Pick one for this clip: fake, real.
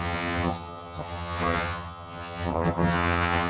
fake